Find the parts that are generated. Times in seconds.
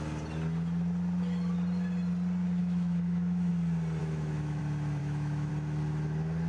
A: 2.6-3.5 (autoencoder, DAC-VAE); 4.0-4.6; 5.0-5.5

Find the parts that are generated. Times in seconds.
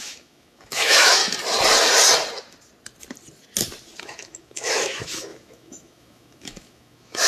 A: 0.0-1.2 (autoencoder, DAC-VAE); 4.0-7.3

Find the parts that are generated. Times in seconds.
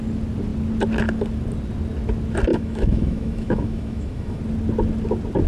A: 2.5-4.4 (autoencoder, DAC-VAE)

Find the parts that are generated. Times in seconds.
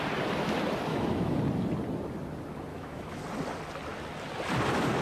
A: 0.9-1.4 (autoencoder, DAC-VAE); 2.7-3.2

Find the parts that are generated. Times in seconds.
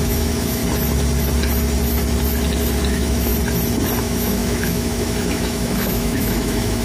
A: 0.0-0.6 (autoencoder, DAC-VAE); 2.9-3.3; 4.0-6.8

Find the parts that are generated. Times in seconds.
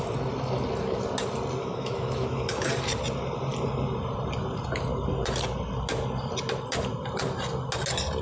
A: 1.6-2.7 (autoencoder, DAC-VAE)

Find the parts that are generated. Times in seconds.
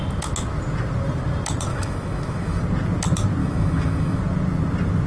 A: 1.7-2.6 (autoencoder, DAC-VAE); 3.4-4.2